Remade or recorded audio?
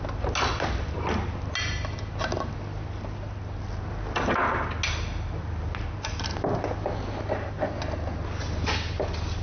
recorded